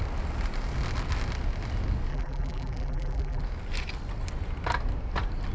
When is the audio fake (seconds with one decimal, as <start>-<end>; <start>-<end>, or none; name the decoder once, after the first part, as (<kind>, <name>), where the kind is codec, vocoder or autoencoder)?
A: 2.1-3.4 (vocoder, BigVGAN v2)